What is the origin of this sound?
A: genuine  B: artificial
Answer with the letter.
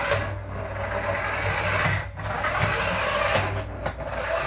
A